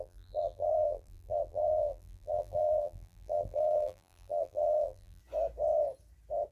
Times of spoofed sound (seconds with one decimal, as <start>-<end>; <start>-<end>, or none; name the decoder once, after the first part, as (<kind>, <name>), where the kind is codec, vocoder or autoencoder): 0.0-5.2 (vocoder, BigVGAN v2)

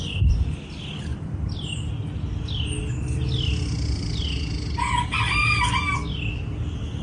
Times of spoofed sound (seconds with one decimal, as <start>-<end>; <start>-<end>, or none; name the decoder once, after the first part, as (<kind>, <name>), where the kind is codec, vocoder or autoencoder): none

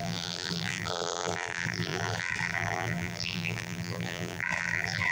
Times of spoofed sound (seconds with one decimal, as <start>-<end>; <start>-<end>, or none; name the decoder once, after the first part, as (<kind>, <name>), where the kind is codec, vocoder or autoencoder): 0.0-5.1 (vocoder, BigVGAN v2)

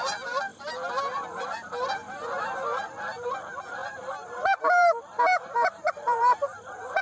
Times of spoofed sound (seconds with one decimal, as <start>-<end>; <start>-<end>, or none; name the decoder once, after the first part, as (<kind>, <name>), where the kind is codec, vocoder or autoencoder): 0.0-7.0 (vocoder, BigVGAN v2)

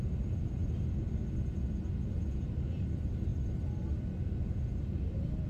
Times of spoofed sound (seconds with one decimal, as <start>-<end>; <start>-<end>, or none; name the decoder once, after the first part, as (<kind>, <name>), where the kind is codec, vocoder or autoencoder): none

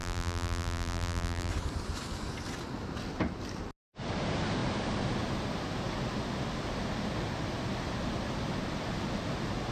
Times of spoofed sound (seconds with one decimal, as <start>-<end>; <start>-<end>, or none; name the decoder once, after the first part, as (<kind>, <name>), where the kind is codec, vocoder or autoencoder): 0.0-1.5 (vocoder, BigVGAN v2)

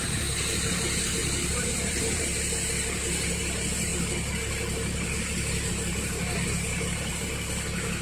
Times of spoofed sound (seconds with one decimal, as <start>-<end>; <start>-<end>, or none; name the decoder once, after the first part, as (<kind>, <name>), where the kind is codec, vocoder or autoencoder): 1.2-2.2 (vocoder, BigVGAN v2)

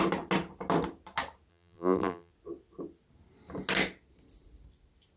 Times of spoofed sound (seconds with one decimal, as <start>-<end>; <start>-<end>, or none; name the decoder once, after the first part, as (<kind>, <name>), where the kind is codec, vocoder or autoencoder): 1.5-2.3 (vocoder, BigVGAN v2)